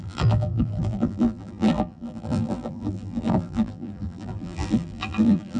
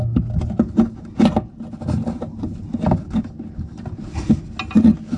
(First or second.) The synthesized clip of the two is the first